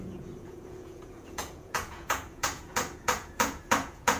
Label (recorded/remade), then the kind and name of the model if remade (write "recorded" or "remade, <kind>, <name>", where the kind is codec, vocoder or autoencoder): remade, vocoder, Vocos